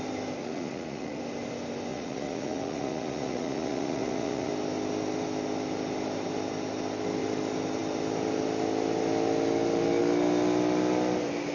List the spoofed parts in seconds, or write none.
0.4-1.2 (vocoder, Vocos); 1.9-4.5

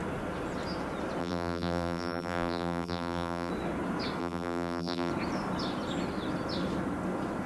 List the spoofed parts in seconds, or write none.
1.2-3.5 (vocoder, BigVGAN v2); 4.2-5.1

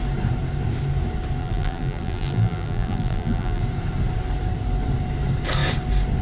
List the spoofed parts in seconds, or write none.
1.4-3.6 (vocoder, BigVGAN v2)